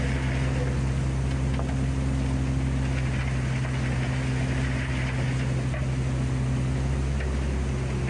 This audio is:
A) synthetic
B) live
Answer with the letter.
B